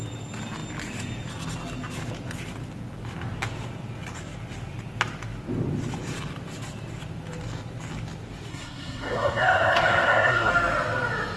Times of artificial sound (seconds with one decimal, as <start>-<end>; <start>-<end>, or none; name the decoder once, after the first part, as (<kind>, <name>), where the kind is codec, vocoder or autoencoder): 8.5-10.5 (codec, SNAC)

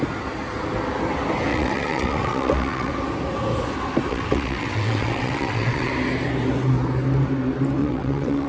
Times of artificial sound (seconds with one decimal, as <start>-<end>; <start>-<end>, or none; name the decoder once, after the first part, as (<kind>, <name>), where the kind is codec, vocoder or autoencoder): 1.5-2.9 (vocoder, WaveNeXt); 4.1-5.9; 7.8-8.5

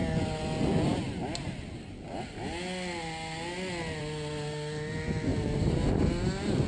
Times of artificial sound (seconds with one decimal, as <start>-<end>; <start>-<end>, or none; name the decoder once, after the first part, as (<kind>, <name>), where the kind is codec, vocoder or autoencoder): 5.3-6.1 (vocoder, BigVGAN v2)

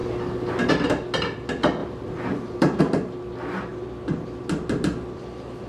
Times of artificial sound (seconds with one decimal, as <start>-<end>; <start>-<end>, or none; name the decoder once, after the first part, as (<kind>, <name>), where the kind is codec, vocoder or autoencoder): 1.8-2.8 (vocoder, BigVGAN v2)

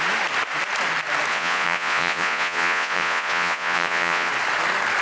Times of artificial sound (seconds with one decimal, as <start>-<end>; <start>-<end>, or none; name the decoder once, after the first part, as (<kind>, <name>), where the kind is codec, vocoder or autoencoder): 1.3-4.3 (vocoder, Vocos)